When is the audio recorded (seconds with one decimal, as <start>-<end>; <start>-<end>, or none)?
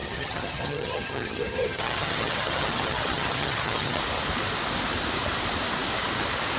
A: 4.0-6.6